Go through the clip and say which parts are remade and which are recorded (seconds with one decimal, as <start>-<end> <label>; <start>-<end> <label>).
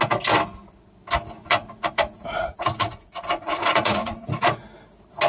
0.0-1.4 recorded; 1.4-4.6 remade; 4.6-5.3 recorded